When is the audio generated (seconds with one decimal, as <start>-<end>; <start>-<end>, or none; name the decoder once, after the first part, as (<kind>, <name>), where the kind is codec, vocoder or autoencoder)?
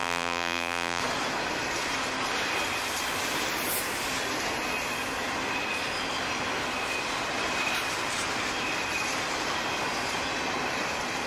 0.0-1.0 (vocoder, BigVGAN v2)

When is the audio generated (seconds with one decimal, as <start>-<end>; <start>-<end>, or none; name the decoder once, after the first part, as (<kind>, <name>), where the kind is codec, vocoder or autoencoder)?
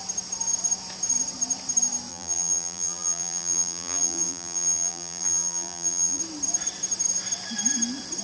2.1-6.2 (vocoder, BigVGAN v2)